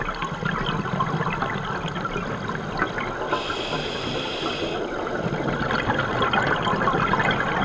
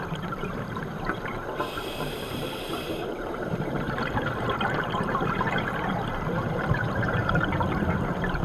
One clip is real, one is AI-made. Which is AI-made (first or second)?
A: second